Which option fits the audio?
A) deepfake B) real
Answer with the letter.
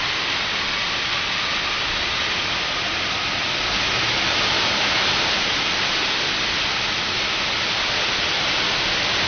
B